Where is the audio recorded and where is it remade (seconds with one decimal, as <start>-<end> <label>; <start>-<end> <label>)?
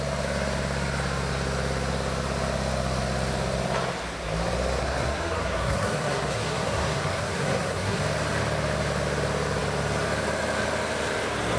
0.0-4.8 recorded; 4.8-8.0 remade; 8.0-11.6 recorded